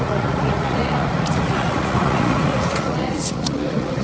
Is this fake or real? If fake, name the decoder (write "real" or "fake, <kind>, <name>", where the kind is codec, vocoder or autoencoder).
fake, vocoder, Vocos